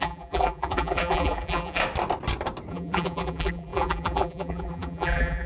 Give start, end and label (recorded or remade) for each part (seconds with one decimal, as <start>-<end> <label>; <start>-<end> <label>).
0.0-1.8 remade; 1.8-2.7 recorded; 2.7-5.5 remade